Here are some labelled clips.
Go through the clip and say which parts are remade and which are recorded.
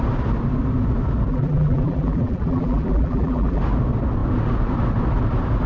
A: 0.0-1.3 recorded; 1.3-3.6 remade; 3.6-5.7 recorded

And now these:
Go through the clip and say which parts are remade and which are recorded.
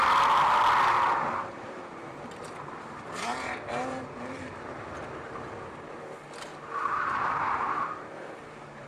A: 0.0-1.4 recorded; 1.4-4.4 remade; 4.4-6.5 recorded; 6.5-8.9 remade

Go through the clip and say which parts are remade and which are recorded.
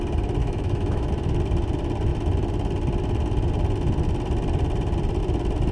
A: 0.0-0.4 recorded; 0.4-1.1 remade; 1.1-5.7 recorded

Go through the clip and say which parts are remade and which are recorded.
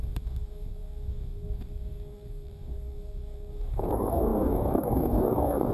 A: 0.0-5.7 remade